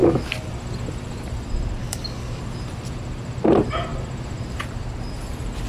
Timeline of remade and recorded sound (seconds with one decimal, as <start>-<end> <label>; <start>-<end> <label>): 0.0-1.8 recorded; 1.8-2.4 remade; 2.4-5.7 recorded